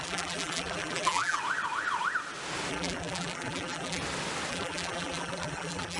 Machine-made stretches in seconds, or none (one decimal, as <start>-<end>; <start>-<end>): 0.0-1.4; 2.7-4.0; 4.5-6.0